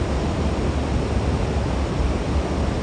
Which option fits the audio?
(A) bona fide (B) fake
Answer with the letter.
A